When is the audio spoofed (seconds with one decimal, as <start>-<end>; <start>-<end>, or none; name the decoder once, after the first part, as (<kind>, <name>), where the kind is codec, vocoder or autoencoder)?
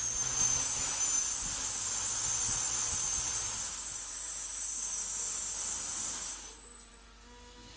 1.2-3.4 (vocoder, BigVGAN v2)